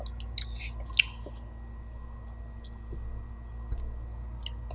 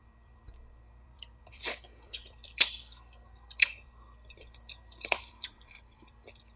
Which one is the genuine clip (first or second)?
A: first